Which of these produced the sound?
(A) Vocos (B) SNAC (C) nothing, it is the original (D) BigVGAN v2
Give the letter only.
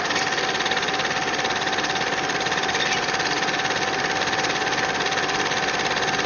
C